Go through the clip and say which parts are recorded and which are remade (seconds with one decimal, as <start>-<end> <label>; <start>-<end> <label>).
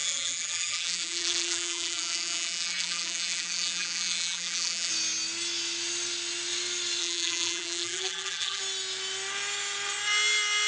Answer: 0.0-4.9 remade; 4.9-7.0 recorded; 7.0-8.6 remade; 8.6-10.7 recorded